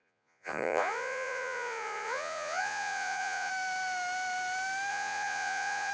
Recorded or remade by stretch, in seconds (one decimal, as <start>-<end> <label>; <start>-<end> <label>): 0.0-3.5 remade; 3.5-4.9 recorded; 4.9-5.9 remade